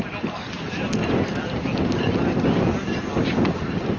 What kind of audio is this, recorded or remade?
recorded